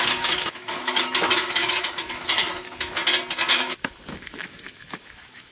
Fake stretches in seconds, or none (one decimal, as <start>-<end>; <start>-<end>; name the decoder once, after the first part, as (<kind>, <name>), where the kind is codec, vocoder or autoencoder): 0.0-3.0 (autoencoder, DAC-VAE); 3.5-5.5

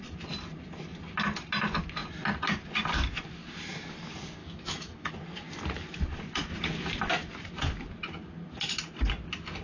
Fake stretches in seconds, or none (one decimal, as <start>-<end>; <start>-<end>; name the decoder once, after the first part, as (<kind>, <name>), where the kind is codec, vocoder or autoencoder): 4.4-5.1 (autoencoder, DAC-VAE)

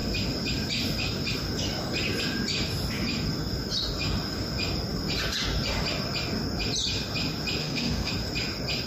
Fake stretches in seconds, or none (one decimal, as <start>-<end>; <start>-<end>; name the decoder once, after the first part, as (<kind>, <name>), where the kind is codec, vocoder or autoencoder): 7.6-8.1 (autoencoder, DAC-VAE)

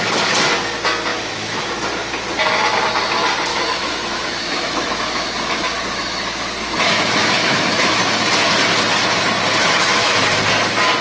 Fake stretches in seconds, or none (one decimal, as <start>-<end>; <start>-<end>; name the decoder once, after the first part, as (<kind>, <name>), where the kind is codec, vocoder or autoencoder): 1.1-1.7 (autoencoder, DAC-VAE); 3.5-8.0; 9.6-10.3

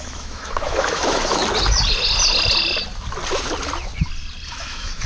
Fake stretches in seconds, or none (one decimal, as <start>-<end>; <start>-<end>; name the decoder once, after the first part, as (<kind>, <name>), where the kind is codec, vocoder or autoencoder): 0.0-1.4 (autoencoder, DAC-VAE); 4.5-5.1